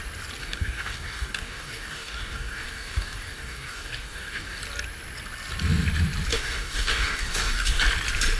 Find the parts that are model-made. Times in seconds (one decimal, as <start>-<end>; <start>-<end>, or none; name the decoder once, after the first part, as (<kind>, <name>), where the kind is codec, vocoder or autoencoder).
0.4-4.6 (codec, DAC); 6.3-7.8